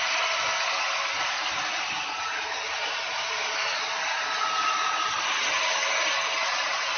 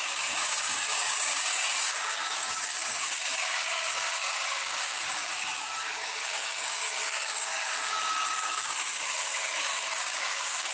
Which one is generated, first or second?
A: second